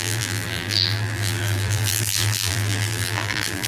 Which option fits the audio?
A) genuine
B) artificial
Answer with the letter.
B